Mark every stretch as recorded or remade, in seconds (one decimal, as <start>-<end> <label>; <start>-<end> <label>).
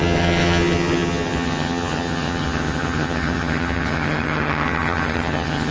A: 0.0-5.7 remade